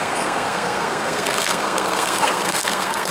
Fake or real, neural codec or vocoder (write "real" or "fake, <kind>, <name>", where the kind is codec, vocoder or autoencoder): fake, codec, SNAC